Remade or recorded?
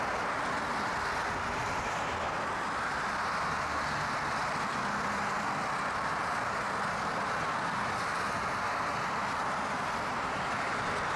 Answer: recorded